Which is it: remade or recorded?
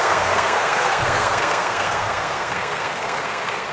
remade